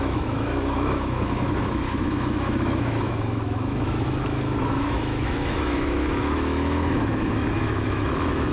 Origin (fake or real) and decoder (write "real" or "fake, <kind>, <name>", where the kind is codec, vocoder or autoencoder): fake, autoencoder, DAC-VAE